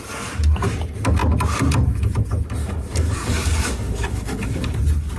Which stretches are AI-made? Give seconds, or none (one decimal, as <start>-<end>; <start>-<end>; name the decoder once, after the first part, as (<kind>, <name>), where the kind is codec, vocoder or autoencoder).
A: 2.6-4.5 (codec, DAC)